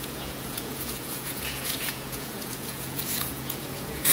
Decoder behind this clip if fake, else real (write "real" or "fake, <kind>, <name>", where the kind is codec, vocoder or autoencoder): fake, vocoder, Vocos